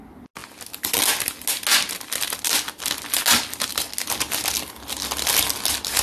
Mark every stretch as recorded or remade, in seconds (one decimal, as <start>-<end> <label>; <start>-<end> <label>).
0.0-6.0 recorded